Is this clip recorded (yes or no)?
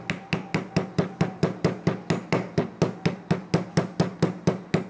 yes